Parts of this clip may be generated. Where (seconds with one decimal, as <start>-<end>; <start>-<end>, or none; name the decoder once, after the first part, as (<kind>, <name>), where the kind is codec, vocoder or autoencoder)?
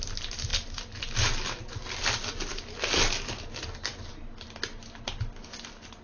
none